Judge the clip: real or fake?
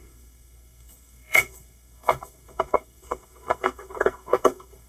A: fake